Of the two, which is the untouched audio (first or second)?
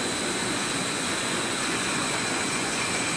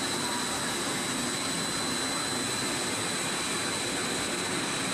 second